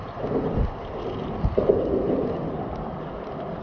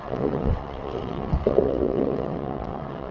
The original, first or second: first